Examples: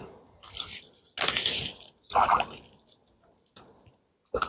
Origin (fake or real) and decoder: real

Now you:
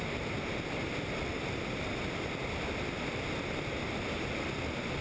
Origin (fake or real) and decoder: real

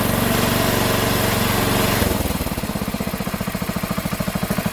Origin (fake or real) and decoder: real